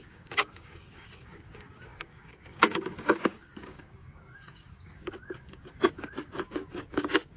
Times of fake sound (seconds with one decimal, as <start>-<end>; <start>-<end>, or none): 0.0-7.4